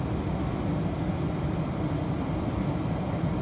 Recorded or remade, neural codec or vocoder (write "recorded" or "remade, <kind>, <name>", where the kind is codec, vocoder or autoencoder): recorded